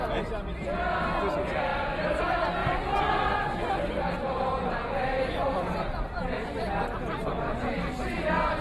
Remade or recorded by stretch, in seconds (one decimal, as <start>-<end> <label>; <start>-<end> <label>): 0.0-1.7 recorded; 1.7-2.2 remade; 2.2-2.6 recorded; 2.6-6.2 remade; 6.2-8.6 recorded